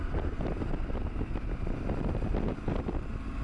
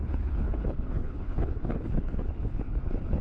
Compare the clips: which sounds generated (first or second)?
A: second